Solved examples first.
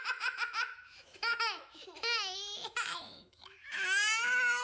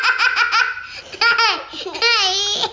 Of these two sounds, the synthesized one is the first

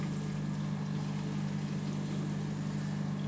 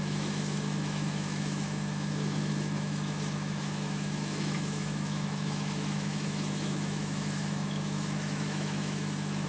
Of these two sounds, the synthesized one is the second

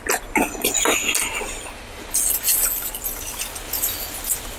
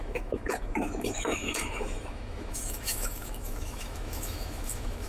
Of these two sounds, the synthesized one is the second